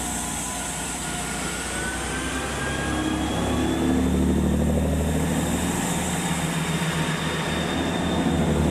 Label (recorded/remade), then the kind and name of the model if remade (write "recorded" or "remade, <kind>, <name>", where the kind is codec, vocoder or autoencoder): recorded